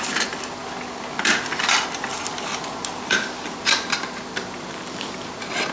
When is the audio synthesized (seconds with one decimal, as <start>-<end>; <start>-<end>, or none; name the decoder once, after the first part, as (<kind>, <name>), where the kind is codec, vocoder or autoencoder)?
none